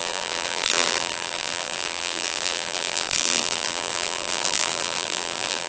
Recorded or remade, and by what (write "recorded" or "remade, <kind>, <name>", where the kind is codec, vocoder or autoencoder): remade, vocoder, BigVGAN v2